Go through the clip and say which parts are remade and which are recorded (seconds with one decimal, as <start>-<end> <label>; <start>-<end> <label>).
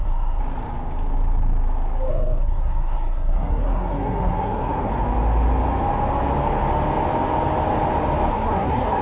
0.0-0.4 remade; 0.4-2.1 recorded; 2.1-4.9 remade; 4.9-8.3 recorded; 8.3-9.0 remade